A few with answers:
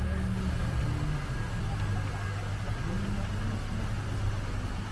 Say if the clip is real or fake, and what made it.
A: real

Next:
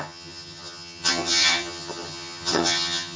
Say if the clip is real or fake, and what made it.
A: fake, vocoder, HiFi-GAN